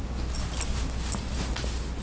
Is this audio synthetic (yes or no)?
no